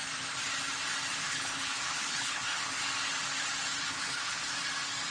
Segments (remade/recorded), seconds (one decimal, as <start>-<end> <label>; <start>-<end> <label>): 0.0-1.2 recorded; 1.2-2.8 remade; 2.8-3.8 recorded; 3.8-4.5 remade; 4.5-5.1 recorded

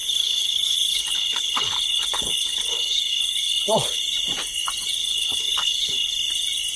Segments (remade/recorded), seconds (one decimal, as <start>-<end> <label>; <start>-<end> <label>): 0.0-4.0 remade; 4.0-5.0 recorded; 5.0-6.1 remade; 6.1-6.8 recorded